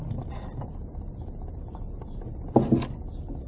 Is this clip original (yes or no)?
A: yes